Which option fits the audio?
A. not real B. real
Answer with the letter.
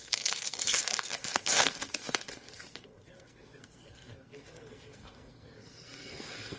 A